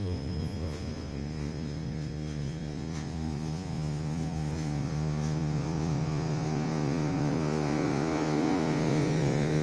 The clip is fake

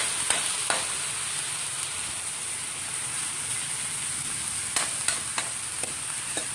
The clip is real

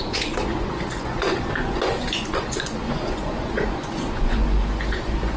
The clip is fake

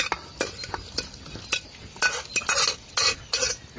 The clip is real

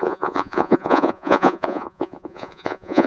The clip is fake